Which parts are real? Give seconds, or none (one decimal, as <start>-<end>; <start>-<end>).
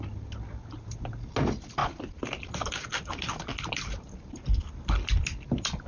0.0-5.9